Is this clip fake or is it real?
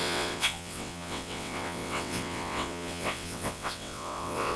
fake